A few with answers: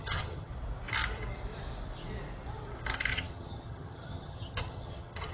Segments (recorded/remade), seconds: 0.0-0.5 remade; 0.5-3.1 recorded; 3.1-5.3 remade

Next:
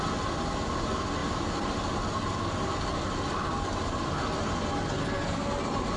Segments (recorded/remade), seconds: 0.0-5.0 recorded; 5.0-5.6 remade; 5.6-6.0 recorded